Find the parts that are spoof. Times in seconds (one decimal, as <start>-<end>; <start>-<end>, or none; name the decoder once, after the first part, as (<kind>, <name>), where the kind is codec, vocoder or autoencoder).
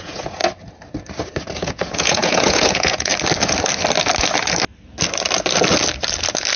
0.0-0.4 (vocoder, Vocos); 1.6-3.1